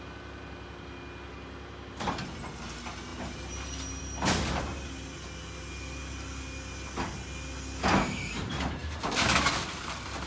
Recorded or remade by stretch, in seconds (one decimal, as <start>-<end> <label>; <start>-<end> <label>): 0.0-8.8 recorded; 8.8-9.5 remade; 9.5-10.3 recorded